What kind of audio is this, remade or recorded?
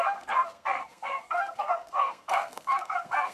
remade